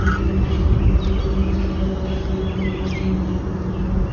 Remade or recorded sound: recorded